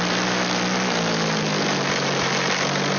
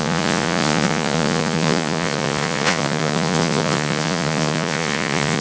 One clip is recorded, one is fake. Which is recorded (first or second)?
first